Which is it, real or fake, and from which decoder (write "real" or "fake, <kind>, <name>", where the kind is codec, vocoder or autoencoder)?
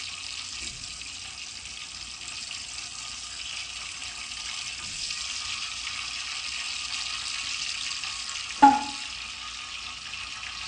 real